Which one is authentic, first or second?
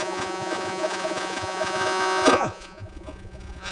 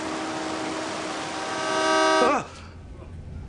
second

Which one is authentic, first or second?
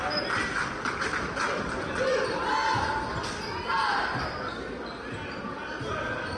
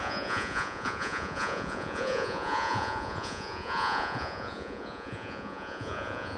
first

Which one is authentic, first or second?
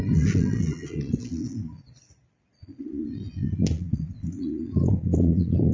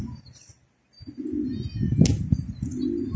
second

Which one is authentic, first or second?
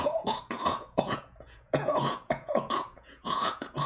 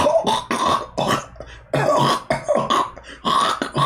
second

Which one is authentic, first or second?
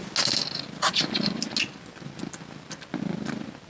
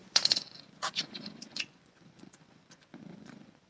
first